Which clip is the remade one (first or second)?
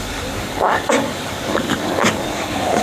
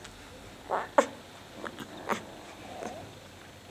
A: first